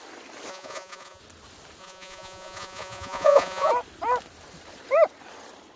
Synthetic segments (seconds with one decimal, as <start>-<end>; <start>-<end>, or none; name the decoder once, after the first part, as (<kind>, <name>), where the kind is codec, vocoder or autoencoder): 0.5-1.2 (vocoder, Vocos); 1.8-3.7